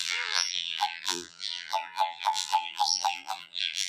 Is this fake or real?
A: fake